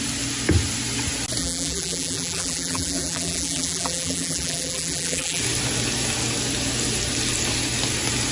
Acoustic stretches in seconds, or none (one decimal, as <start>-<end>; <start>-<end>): 0.0-1.4; 5.4-8.3